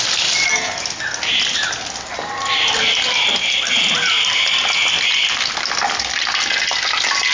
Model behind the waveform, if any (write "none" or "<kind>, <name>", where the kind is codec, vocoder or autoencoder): none